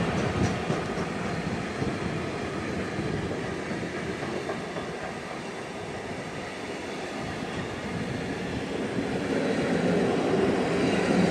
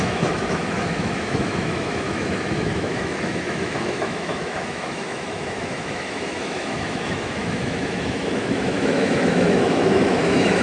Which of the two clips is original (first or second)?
first